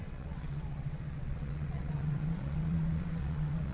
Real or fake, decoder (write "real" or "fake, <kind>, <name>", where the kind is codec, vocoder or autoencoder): fake, vocoder, WaveNeXt